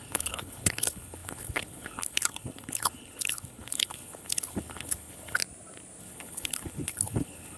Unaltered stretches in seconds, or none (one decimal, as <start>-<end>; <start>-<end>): 5.4-6.0